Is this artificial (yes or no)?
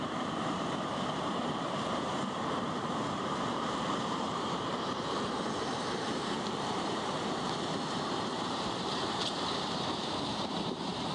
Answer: yes